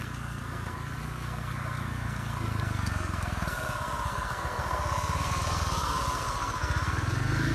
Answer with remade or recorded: remade